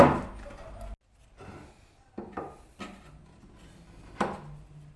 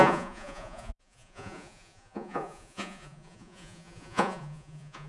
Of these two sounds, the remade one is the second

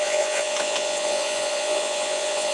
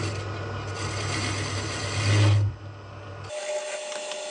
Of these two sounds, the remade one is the first